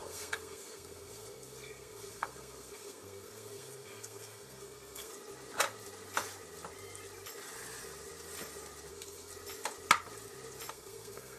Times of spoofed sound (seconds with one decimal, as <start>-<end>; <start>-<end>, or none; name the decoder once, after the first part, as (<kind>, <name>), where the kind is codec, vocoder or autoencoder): 0.0-5.1 (codec, SNAC); 8.9-9.3; 10.7-11.4